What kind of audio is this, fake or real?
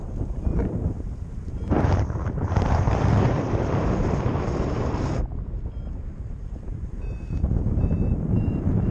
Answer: fake